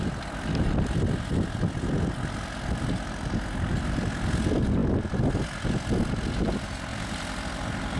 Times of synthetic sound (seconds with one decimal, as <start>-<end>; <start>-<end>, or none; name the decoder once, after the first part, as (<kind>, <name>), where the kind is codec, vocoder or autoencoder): 4.8-5.3 (vocoder, BigVGAN v2); 6.9-8.0